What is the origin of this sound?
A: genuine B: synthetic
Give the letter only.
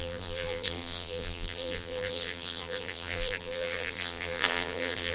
B